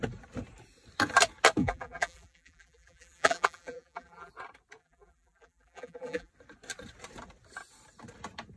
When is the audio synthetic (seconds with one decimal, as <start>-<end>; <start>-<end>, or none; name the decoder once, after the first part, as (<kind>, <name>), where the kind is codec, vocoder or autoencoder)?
1.6-4.3 (vocoder, BigVGAN v2); 4.8-6.3